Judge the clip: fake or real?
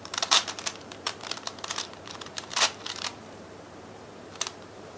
fake